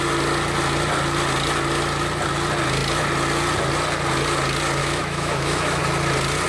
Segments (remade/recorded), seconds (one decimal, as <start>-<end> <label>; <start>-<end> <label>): 0.0-4.8 recorded; 4.8-5.8 remade; 5.8-6.5 recorded